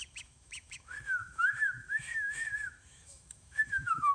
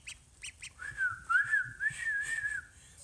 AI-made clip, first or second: first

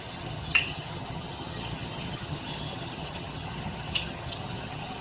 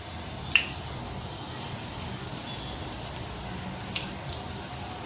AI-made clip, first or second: first